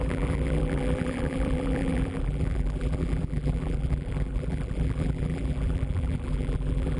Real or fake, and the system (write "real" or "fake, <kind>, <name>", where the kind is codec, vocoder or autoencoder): fake, vocoder, BigVGAN v2